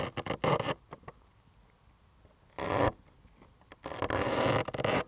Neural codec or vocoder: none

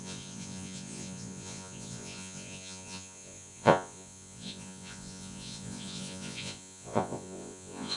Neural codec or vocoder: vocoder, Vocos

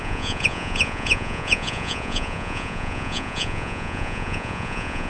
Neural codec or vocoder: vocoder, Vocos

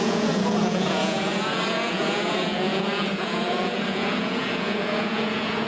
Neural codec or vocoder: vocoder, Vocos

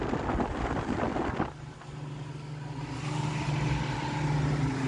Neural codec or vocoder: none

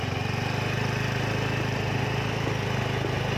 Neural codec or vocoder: none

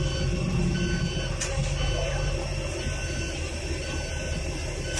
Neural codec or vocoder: none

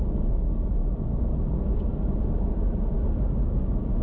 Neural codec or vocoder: none